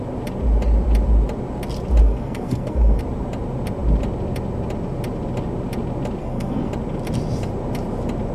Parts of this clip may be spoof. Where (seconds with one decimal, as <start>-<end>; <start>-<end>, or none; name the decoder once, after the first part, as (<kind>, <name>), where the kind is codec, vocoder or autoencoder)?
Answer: 2.0-3.0 (codec, SNAC); 6.2-6.7